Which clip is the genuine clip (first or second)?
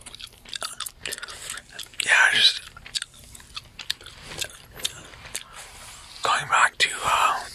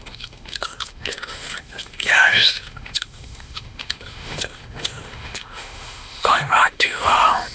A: first